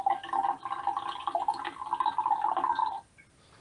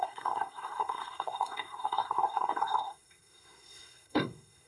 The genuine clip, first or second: first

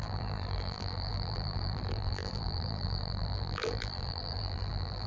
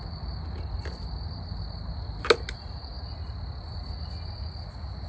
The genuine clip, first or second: second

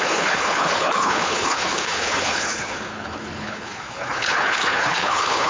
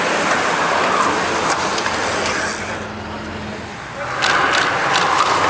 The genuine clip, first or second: second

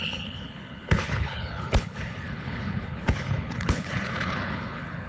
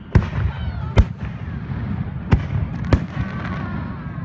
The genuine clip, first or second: second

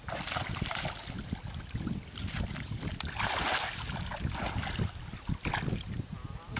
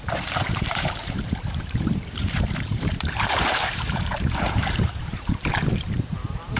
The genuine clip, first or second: first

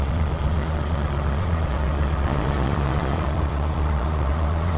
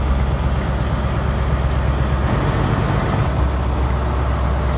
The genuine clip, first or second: second